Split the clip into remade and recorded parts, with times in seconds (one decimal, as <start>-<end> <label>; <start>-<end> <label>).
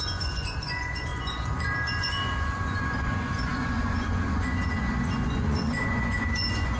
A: 0.0-6.8 remade